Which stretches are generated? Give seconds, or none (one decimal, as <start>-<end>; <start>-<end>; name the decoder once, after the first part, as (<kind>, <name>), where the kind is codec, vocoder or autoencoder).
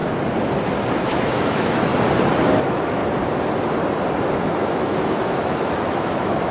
0.9-1.9 (autoencoder, DAC-VAE); 2.6-3.0; 4.3-6.5